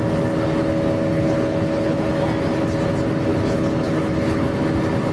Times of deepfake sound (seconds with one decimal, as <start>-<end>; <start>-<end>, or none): 1.1-2.1; 3.3-4.5